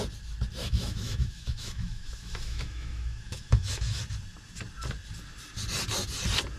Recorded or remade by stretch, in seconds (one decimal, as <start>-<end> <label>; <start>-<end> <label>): 0.0-0.6 recorded; 0.6-4.0 remade; 4.0-6.6 recorded